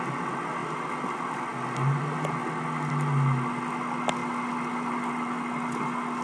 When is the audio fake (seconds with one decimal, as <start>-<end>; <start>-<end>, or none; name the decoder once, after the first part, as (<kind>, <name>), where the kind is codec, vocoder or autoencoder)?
none